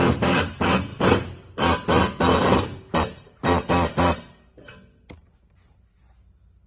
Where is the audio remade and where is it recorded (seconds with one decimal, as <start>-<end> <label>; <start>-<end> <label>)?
0.0-6.7 recorded